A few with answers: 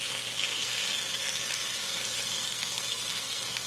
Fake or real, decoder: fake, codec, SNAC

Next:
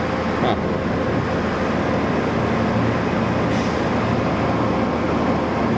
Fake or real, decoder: real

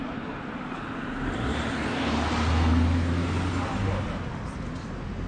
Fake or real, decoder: real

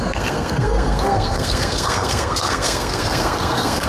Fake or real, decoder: fake, codec, SNAC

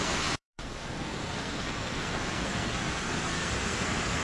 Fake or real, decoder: fake, codec, SNAC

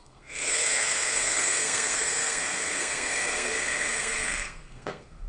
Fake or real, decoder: fake, codec, SNAC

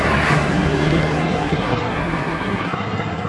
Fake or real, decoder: fake, codec, SNAC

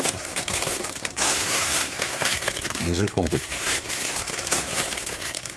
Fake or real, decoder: fake, codec, SNAC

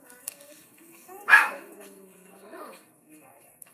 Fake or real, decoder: fake, codec, SNAC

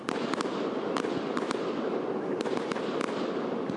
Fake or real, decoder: real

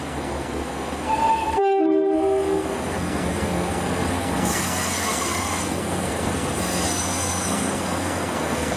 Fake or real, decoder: fake, codec, SNAC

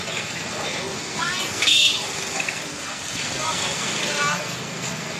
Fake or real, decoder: fake, codec, SNAC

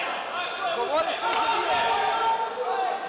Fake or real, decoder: real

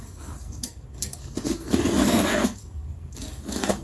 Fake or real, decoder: fake, codec, SNAC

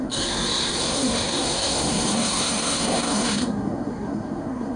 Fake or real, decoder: fake, codec, SNAC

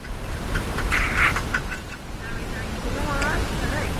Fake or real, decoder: real